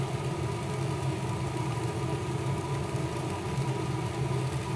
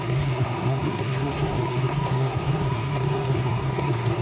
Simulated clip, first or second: second